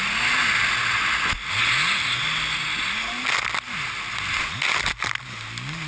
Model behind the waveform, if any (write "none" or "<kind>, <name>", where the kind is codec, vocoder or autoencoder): none